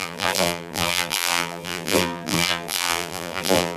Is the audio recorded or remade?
remade